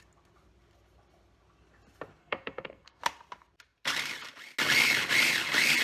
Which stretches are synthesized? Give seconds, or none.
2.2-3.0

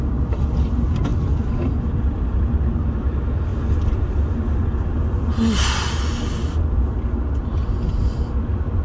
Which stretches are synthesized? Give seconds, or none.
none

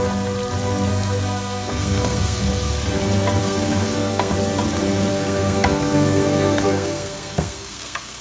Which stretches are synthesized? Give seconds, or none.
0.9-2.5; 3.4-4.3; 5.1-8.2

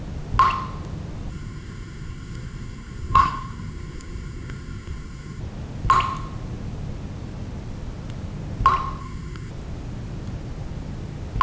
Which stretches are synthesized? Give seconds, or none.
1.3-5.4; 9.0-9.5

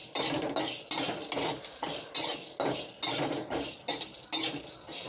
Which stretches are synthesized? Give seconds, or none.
none

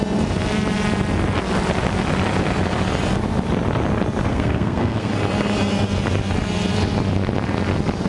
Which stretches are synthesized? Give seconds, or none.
4.3-5.1

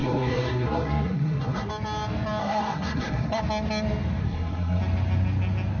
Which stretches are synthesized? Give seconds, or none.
0.0-1.7; 2.4-3.4; 4.2-4.8

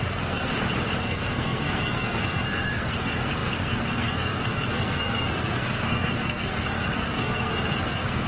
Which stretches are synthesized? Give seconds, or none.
0.0-0.5; 1.0-8.3